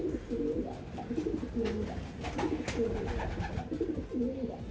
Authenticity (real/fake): real